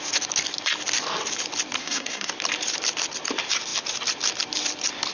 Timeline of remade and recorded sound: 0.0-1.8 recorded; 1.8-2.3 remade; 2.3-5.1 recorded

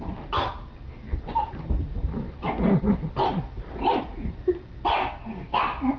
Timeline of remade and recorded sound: 0.0-5.0 recorded; 5.0-5.6 remade; 5.6-6.0 recorded

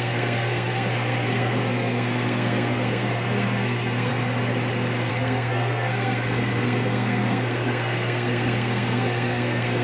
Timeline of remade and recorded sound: 0.0-4.1 remade; 4.1-5.1 recorded; 5.1-9.8 remade